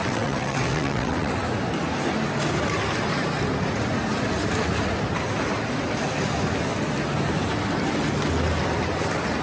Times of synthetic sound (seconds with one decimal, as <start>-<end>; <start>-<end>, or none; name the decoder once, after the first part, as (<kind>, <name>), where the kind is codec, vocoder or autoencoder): 0.0-1.3 (vocoder, WaveNeXt)